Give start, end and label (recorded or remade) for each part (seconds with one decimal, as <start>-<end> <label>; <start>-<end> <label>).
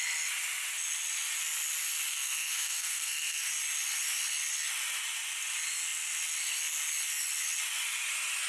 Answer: 0.0-2.1 recorded; 2.1-3.5 remade; 3.5-8.5 recorded